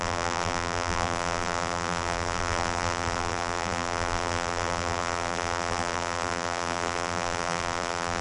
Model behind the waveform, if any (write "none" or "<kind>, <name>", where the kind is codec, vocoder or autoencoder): vocoder, BigVGAN v2